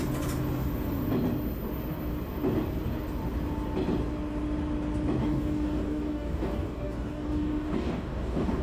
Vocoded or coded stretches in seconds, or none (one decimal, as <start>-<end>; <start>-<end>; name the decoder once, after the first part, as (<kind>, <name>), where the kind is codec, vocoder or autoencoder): 5.2-8.6 (codec, DAC)